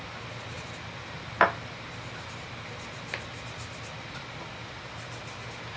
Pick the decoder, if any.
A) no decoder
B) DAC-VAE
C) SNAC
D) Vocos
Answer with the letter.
A